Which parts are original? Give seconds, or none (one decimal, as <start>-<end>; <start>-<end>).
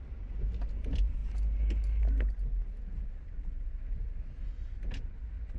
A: 0.0-5.6